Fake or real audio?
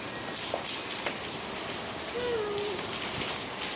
real